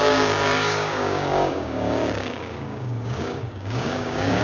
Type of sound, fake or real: fake